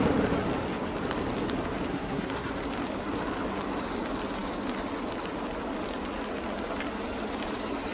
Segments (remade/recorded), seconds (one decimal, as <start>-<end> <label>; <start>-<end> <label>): 0.0-1.9 recorded; 1.9-2.5 remade; 2.5-7.9 recorded